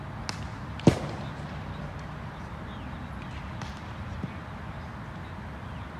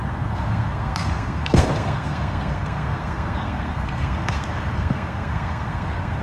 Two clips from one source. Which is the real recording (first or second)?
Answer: first